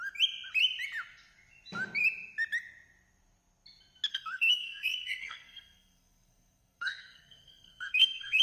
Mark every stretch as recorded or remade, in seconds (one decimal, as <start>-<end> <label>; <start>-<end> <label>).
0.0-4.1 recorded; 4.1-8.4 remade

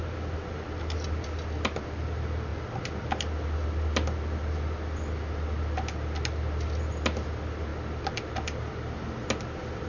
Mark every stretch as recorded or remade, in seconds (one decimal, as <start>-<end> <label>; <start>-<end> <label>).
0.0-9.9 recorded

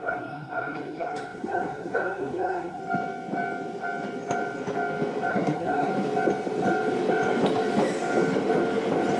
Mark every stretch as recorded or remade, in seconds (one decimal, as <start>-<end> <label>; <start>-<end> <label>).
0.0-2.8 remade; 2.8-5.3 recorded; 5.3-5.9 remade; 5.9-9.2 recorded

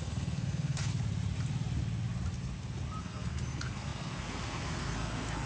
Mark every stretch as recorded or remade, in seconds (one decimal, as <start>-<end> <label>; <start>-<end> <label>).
0.0-0.9 remade; 0.9-3.0 recorded; 3.0-5.5 remade